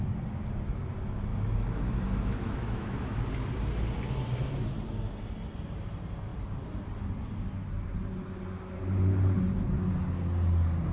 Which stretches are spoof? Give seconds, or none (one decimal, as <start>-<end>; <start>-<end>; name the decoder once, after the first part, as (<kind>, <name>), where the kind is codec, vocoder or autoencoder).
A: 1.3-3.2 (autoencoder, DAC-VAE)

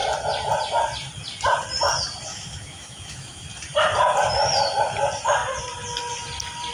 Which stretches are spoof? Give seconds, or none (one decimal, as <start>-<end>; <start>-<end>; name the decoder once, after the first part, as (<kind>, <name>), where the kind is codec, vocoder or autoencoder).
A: 2.3-3.5 (autoencoder, DAC-VAE)

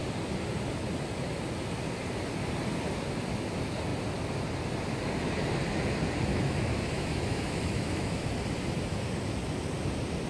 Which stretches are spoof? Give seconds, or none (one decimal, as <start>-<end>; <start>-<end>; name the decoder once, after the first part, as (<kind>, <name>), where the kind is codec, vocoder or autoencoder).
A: 6.3-8.3 (autoencoder, DAC-VAE)

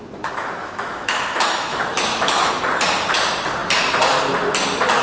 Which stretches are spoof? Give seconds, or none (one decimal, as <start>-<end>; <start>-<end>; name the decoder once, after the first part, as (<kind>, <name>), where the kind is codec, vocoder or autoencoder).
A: 0.6-2.5 (autoencoder, DAC-VAE)

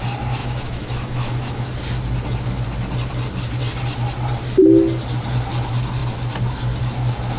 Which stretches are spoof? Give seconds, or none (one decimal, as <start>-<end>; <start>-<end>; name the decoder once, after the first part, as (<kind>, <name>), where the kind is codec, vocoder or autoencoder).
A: 0.4-1.7 (autoencoder, DAC-VAE)

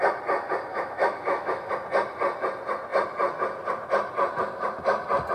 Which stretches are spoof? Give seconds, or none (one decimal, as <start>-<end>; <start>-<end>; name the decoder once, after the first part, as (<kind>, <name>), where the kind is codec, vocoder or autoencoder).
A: 0.7-1.7 (autoencoder, DAC-VAE)